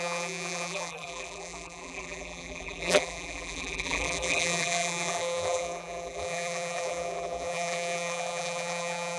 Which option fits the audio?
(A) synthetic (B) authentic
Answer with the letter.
A